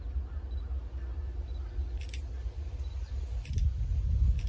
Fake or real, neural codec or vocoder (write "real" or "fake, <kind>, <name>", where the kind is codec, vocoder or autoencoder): real